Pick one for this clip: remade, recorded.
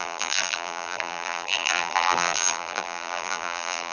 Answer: remade